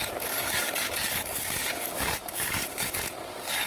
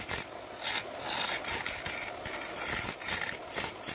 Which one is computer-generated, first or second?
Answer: first